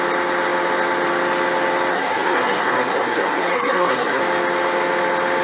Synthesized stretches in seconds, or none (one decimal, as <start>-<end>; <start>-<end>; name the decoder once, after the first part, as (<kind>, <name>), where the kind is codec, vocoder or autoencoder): 1.9-4.2 (codec, SNAC)